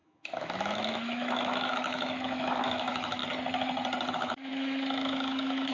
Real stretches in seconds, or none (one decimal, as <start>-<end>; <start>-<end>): 3.2-4.1